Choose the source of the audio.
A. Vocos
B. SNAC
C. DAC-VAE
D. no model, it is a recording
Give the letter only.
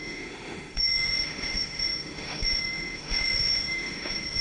C